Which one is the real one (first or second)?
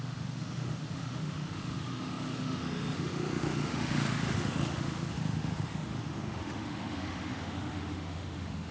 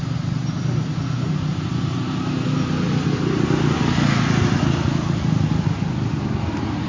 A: second